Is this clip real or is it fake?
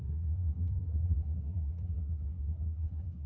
fake